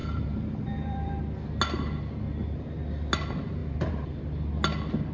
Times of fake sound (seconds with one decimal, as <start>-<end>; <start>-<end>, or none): 0.0-1.2; 3.6-4.2